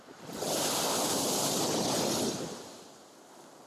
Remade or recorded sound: remade